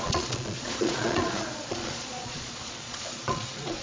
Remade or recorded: remade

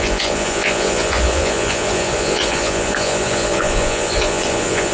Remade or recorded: remade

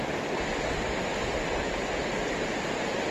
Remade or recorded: recorded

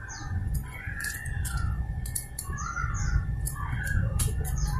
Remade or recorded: remade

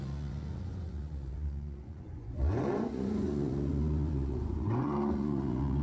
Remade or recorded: remade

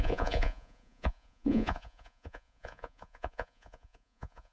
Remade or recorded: remade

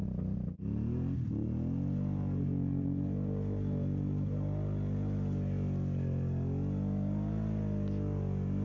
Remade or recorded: recorded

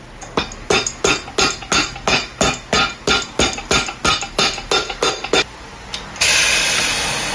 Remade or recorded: recorded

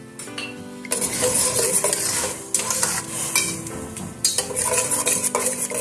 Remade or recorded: recorded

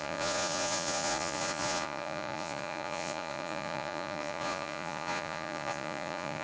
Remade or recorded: remade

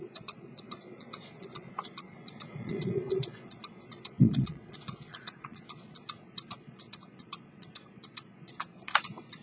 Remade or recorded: remade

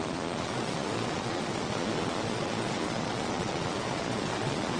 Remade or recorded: remade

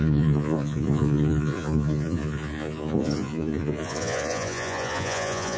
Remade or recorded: remade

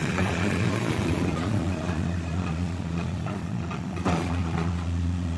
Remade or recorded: remade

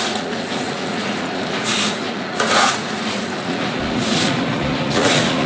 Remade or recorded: remade